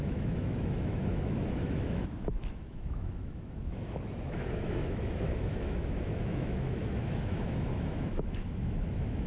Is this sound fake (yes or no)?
yes